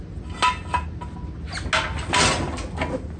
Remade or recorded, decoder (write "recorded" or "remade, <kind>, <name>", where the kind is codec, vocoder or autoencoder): recorded